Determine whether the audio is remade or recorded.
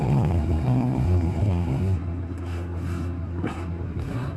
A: remade